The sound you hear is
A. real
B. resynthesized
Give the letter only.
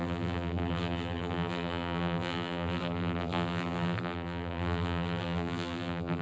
B